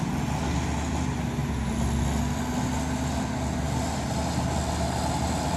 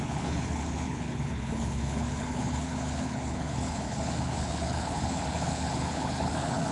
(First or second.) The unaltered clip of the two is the first